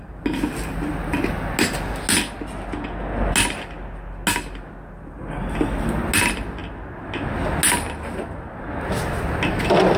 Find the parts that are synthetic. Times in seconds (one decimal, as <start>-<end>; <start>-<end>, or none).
none